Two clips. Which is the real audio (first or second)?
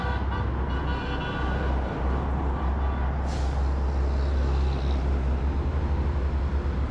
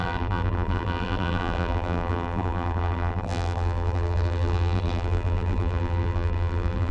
first